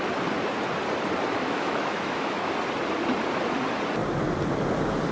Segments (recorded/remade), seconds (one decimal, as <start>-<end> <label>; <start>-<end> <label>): 0.0-1.4 recorded; 1.4-2.5 remade; 2.5-5.1 recorded